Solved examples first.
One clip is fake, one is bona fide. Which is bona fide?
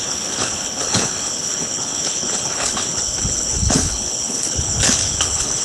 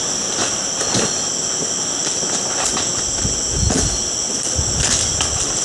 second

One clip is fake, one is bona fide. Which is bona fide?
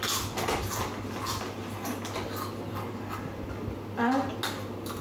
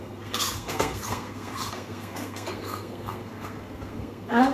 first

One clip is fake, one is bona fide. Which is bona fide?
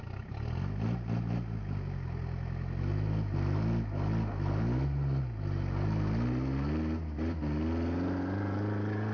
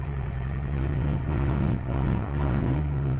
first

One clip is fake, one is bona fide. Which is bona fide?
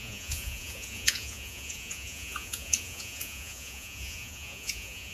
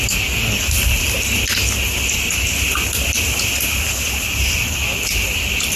second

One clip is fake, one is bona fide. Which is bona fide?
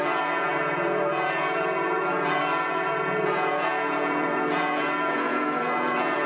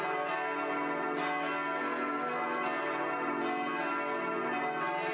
second